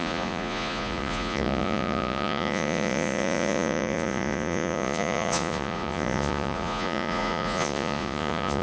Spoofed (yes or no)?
yes